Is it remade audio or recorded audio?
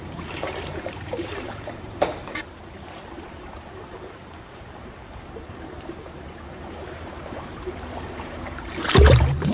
remade